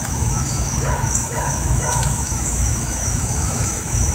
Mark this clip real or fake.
fake